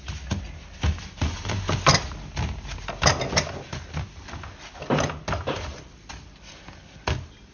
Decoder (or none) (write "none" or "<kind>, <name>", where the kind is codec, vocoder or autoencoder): none